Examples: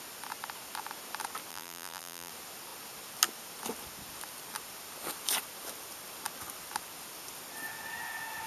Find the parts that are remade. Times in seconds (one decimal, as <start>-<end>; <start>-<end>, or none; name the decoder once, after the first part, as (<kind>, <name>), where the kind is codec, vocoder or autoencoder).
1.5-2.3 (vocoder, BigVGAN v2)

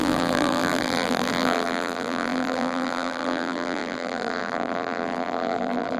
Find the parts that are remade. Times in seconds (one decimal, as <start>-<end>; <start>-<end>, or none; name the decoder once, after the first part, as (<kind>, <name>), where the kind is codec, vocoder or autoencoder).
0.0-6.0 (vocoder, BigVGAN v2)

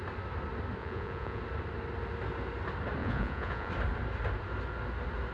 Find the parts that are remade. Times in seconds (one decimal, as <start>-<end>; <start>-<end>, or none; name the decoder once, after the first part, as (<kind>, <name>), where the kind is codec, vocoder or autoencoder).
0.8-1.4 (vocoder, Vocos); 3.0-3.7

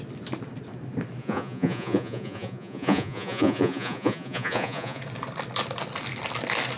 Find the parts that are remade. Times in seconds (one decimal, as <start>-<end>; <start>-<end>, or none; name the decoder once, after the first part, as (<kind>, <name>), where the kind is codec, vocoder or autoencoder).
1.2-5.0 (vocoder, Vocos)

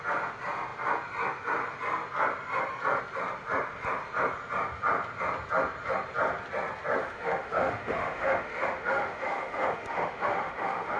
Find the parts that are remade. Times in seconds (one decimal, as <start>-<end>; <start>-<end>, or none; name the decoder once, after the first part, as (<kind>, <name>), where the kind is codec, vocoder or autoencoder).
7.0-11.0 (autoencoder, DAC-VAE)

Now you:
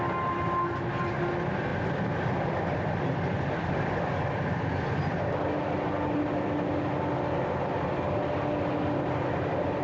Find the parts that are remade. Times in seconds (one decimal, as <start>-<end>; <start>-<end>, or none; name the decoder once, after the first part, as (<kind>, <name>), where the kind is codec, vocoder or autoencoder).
none

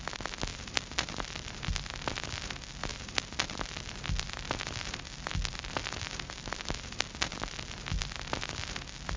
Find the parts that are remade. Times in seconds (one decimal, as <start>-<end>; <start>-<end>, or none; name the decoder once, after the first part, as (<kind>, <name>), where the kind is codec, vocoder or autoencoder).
0.5-1.7 (vocoder, BigVGAN v2); 2.9-7.0

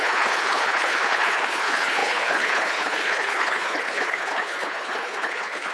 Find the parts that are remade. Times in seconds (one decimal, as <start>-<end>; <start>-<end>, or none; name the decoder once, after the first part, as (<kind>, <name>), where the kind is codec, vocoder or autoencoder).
0.0-5.7 (codec, HILCodec)